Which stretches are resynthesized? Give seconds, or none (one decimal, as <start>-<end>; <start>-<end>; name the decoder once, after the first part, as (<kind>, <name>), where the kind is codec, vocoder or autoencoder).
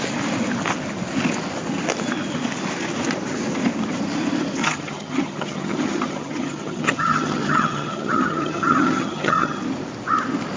4.6-9.6 (vocoder, HiFi-GAN)